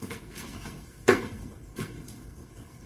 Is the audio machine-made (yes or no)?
yes